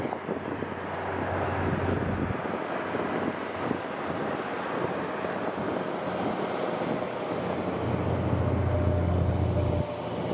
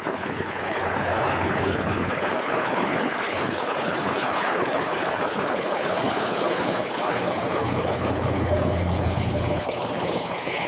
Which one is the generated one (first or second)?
second